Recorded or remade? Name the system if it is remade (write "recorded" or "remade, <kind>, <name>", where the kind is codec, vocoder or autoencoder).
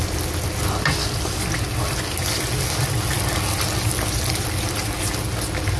recorded